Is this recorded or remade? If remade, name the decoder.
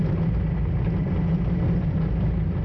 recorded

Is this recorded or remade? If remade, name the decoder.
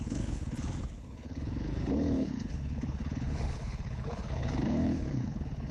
remade, codec, HILCodec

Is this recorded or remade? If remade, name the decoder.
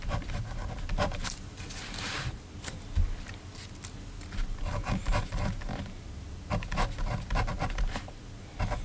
recorded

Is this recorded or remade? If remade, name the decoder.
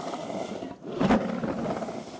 recorded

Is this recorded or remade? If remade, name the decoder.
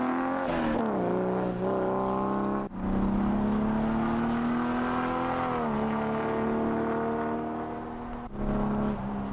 recorded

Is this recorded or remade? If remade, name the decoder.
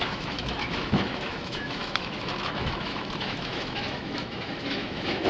remade, autoencoder, DAC-VAE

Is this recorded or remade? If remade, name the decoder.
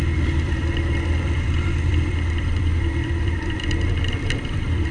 remade, vocoder, BigVGAN v2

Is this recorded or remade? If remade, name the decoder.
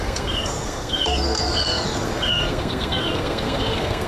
remade, codec, SNAC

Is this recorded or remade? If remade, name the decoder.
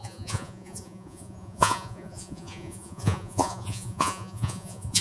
remade, vocoder, Vocos